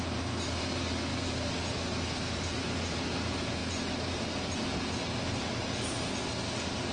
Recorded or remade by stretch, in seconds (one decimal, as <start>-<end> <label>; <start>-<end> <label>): 0.0-6.9 recorded